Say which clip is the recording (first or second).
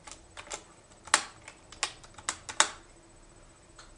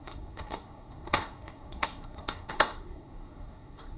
first